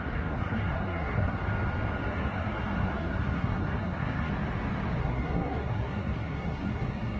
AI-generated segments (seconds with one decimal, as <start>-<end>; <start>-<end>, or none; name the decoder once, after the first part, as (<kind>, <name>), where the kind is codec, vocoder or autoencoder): 0.0-1.4 (codec, SNAC); 2.0-4.3; 5.0-7.2